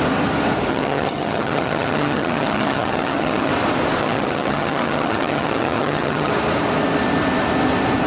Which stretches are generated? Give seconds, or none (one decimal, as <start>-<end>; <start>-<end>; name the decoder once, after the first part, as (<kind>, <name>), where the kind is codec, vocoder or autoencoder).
0.7-3.5 (vocoder, HiFi-GAN); 4.0-6.3